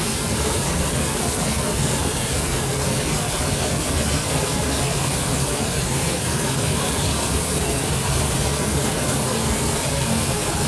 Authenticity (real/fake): fake